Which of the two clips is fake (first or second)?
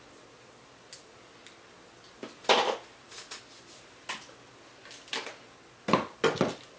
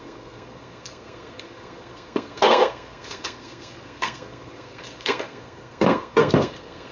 second